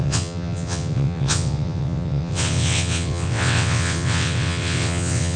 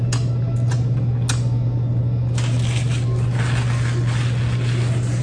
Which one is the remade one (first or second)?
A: first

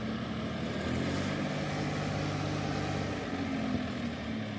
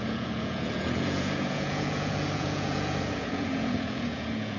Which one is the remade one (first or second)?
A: second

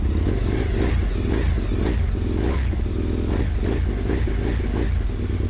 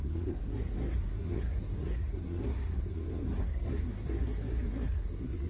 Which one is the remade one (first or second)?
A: second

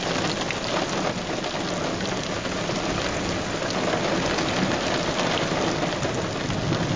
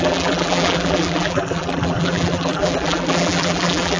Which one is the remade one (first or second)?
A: second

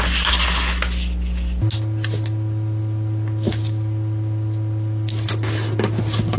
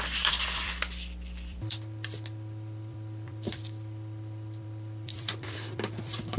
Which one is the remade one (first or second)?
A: second